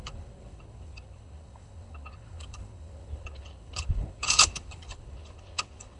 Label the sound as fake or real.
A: fake